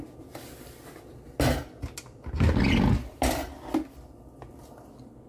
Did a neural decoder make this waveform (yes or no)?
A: no